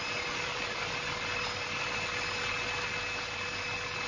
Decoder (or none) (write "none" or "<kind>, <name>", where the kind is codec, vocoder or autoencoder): none